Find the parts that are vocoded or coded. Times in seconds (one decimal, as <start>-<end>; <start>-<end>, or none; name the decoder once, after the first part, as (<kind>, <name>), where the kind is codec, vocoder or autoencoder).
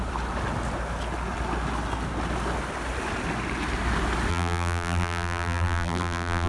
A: 4.3-6.5 (vocoder, BigVGAN v2)